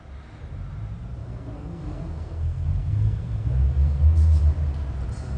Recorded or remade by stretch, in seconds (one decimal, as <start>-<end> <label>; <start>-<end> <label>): 0.0-1.2 recorded; 1.2-4.4 remade; 4.4-5.4 recorded